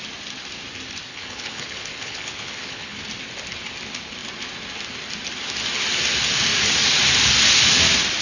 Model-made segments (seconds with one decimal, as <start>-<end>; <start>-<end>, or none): 1.1-3.0